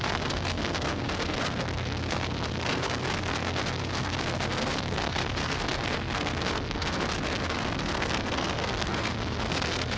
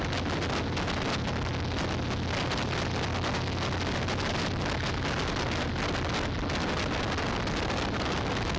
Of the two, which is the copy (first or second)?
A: first